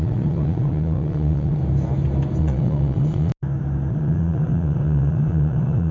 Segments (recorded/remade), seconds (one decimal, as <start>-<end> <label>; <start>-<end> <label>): 0.0-1.6 remade; 1.6-2.4 recorded; 2.4-3.3 remade; 3.3-3.9 recorded; 3.9-5.9 remade